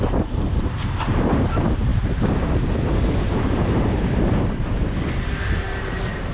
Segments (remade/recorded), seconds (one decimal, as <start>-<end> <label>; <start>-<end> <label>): 0.0-6.3 remade